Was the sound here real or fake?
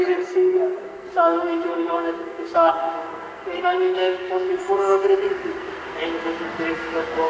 fake